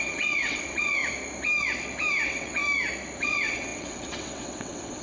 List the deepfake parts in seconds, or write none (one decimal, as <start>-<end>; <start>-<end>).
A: 0.0-1.0; 2.1-2.6; 3.2-5.0